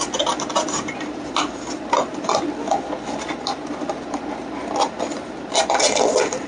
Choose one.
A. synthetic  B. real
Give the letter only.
B